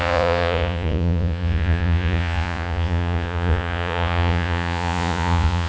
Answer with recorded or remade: remade